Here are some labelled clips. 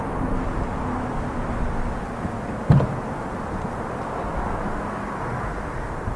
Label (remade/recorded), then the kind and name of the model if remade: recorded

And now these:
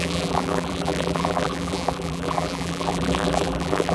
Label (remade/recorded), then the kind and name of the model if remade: remade, vocoder, BigVGAN v2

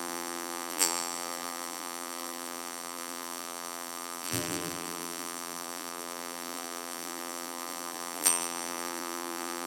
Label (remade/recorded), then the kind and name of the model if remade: remade, vocoder, BigVGAN v2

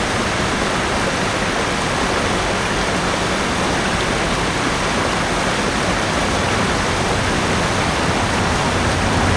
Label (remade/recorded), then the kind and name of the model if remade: recorded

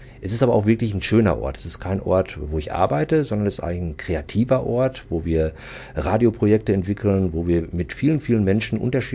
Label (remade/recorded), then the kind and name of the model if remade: recorded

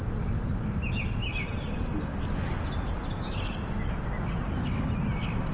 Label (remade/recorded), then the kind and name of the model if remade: recorded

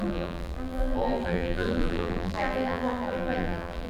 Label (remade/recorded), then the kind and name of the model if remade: remade, vocoder, BigVGAN v2